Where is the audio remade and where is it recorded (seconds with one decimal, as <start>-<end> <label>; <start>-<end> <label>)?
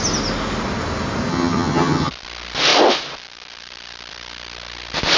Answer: 0.0-1.3 recorded; 1.3-2.1 remade; 2.1-5.2 recorded